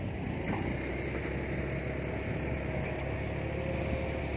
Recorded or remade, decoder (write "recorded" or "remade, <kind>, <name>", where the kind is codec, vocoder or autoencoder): recorded